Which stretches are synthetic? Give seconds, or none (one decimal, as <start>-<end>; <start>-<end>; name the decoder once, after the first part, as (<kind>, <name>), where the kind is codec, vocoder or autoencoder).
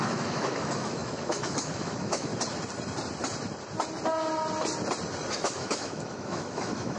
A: 0.0-2.3 (autoencoder, DAC-VAE); 5.3-7.0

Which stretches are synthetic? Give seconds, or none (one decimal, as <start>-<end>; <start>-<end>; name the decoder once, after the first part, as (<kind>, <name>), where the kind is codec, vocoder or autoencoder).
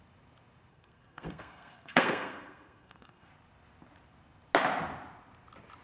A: 0.7-3.3 (codec, SNAC)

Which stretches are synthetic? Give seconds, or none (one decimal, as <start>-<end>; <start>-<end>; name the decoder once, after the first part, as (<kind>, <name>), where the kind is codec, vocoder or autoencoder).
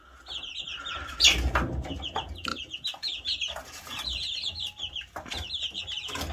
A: 0.7-1.2 (vocoder, BigVGAN v2); 2.5-5.8